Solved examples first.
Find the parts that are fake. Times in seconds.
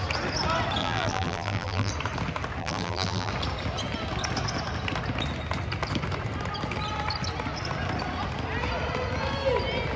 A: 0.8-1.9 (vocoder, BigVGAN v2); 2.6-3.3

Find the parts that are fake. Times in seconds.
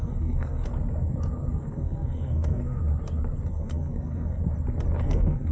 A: 0.0-0.7 (codec, SNAC); 1.5-2.8; 3.5-4.4; 5.0-5.5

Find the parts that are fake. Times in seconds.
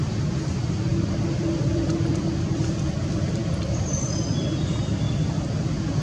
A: 0.9-1.9 (vocoder, BigVGAN v2); 3.4-4.9